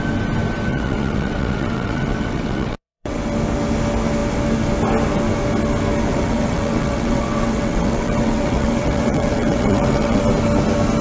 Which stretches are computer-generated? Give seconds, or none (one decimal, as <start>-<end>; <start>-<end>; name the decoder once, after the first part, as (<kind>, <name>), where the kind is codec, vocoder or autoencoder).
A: 0.7-3.2 (vocoder, WaveNeXt); 6.1-10.2